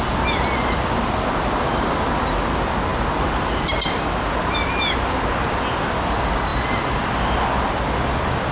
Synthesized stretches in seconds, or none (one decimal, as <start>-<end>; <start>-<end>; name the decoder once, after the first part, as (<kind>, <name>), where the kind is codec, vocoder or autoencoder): none